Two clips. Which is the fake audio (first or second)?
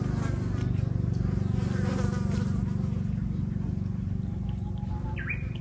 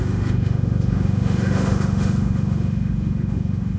second